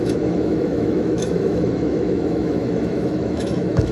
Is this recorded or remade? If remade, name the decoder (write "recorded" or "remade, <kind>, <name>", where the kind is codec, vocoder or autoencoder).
remade, autoencoder, DAC-VAE